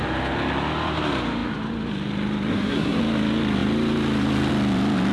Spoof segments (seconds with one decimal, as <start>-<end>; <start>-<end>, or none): 2.5-3.0